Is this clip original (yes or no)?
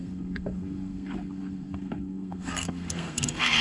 no